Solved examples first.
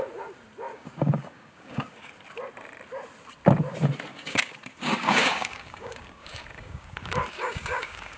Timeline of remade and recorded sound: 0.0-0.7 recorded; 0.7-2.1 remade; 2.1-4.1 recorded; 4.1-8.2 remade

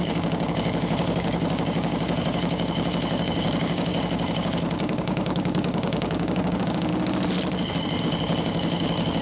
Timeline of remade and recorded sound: 0.0-6.9 remade; 6.9-8.0 recorded; 8.0-9.2 remade

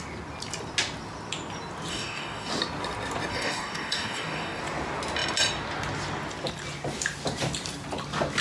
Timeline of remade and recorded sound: 0.0-1.9 recorded; 1.9-2.5 remade; 2.5-3.3 recorded; 3.3-4.6 remade; 4.6-8.4 recorded

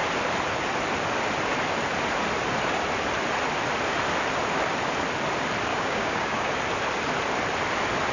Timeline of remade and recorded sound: 0.0-5.7 recorded; 5.7-6.5 remade; 6.5-8.1 recorded

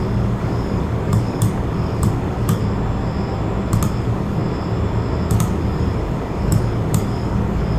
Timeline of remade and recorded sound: 0.0-2.6 remade; 2.6-4.0 recorded; 4.0-4.4 remade; 4.4-5.3 recorded; 5.3-7.8 remade

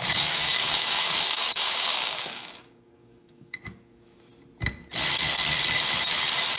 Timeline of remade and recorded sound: 0.0-4.3 remade; 4.3-6.6 recorded

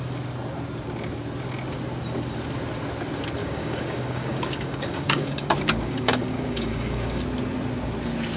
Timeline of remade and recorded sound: 0.0-3.4 recorded; 3.4-7.2 remade; 7.2-8.4 recorded

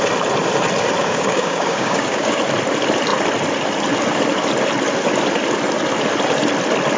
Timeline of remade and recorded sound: 0.0-1.0 recorded; 1.0-2.4 remade; 2.4-7.0 recorded